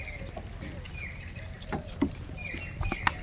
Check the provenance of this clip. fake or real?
real